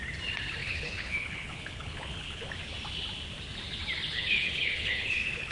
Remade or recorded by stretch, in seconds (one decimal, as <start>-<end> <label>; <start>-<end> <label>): 0.0-0.6 recorded; 0.6-2.5 remade; 2.5-4.1 recorded; 4.1-5.5 remade